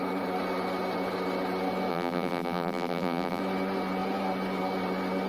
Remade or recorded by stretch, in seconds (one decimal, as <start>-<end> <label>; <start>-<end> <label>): 0.0-1.9 recorded; 1.9-3.4 remade; 3.4-5.3 recorded